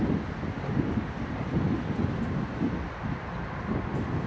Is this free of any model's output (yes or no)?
yes